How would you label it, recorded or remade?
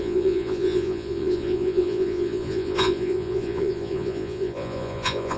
remade